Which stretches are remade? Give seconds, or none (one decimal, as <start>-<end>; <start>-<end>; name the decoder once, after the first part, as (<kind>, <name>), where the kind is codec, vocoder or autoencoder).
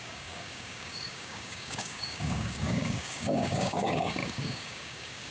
0.0-5.3 (codec, DAC)